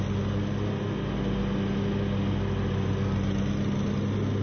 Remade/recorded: recorded